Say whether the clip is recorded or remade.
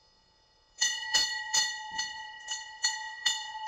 remade